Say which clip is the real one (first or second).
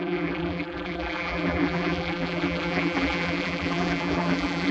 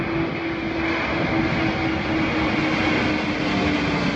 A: second